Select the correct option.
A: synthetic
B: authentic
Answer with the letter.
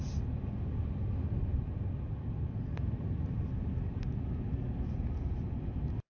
B